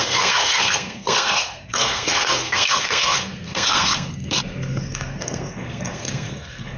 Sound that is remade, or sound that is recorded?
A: remade